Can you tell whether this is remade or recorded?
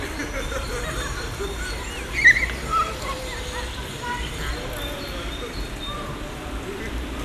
recorded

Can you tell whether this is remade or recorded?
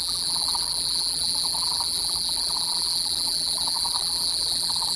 remade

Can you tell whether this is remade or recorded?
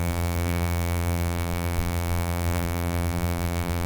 remade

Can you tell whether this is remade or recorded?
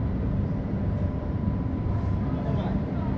remade